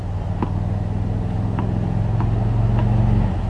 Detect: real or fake real